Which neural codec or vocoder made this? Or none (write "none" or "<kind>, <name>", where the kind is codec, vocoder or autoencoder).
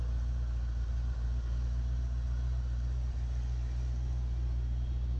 none